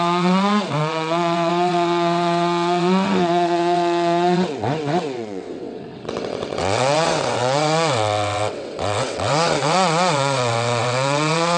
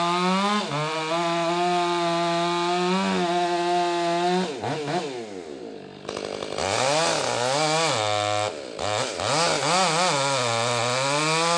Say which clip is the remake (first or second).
first